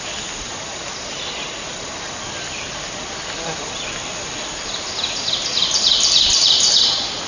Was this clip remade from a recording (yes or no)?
no